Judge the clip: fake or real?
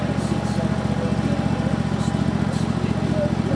real